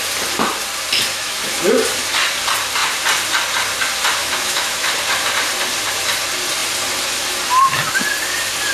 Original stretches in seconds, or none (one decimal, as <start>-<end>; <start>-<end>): 0.0-1.1; 1.6-4.2; 4.9-8.7